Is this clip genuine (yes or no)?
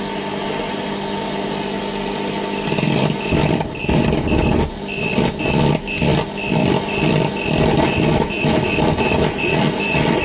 yes